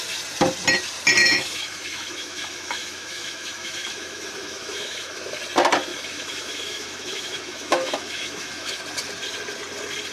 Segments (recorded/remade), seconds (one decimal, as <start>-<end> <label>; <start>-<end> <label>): 0.0-1.2 recorded; 1.2-5.4 remade; 5.4-5.9 recorded; 5.9-8.8 remade; 8.8-10.1 recorded